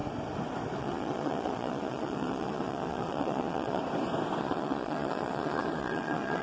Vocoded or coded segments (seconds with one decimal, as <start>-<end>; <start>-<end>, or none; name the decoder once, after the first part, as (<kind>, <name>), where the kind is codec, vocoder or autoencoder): 0.8-3.8 (vocoder, Vocos); 4.4-6.4